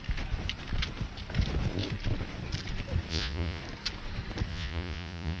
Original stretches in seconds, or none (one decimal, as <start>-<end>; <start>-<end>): 0.0-3.1; 3.6-4.5